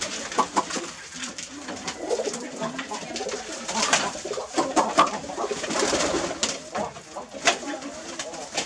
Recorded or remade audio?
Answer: recorded